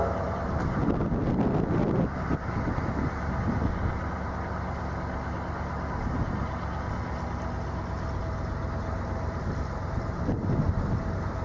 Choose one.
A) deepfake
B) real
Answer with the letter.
B